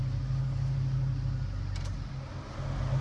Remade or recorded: recorded